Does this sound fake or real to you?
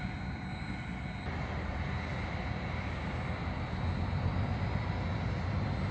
real